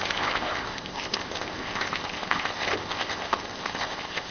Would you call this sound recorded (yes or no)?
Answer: no